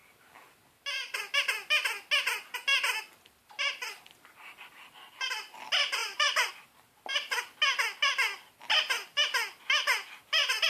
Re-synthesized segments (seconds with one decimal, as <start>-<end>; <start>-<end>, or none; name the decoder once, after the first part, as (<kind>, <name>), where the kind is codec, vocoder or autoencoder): 6.0-6.5 (vocoder, BigVGAN v2)